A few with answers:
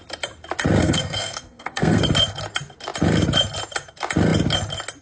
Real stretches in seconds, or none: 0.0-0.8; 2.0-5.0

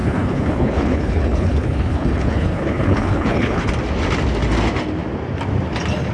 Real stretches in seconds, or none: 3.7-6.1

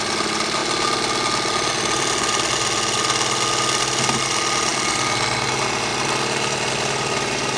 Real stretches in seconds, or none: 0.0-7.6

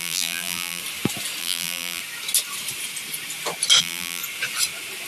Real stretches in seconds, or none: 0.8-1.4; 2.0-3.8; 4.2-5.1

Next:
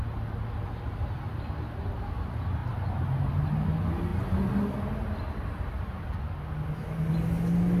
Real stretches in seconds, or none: 0.0-7.8

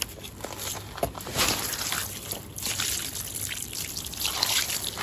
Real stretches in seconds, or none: 0.0-5.0